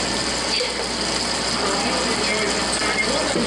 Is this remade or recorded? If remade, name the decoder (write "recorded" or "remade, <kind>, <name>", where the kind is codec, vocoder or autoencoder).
recorded